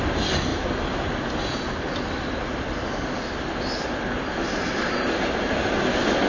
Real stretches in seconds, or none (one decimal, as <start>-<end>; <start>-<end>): 0.0-6.3

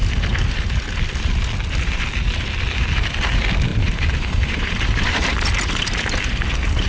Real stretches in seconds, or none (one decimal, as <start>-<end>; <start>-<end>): 0.0-3.7; 5.3-6.9

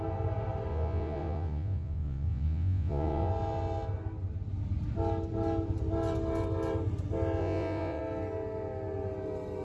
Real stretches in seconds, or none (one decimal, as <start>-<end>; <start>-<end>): 0.0-0.7; 3.3-7.4; 8.0-9.6

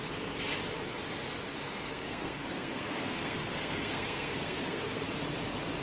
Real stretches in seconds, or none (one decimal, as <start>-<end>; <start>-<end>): 0.0-1.6; 5.1-5.8

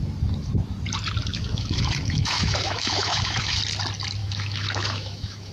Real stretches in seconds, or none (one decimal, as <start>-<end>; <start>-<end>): 0.0-1.3; 3.6-4.2

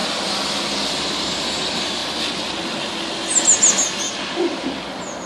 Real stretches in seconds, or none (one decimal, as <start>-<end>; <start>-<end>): 0.0-0.9; 2.0-5.3

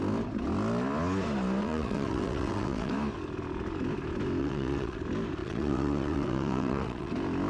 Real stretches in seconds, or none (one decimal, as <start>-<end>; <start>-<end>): 0.0-1.6; 2.9-4.4; 5.0-5.4; 7.1-7.5

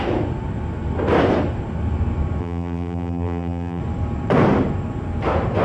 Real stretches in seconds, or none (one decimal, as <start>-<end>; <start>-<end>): 0.0-2.4; 3.8-5.6